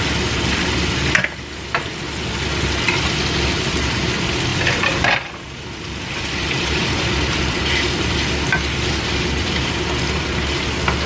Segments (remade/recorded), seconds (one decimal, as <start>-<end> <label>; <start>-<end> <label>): 0.0-4.5 recorded; 4.5-7.6 remade; 7.6-11.1 recorded